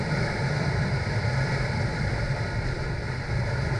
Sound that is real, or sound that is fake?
real